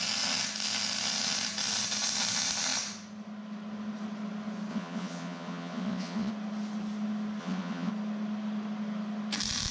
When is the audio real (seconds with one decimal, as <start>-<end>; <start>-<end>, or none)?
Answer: 0.0-4.7; 6.3-7.4; 7.9-9.7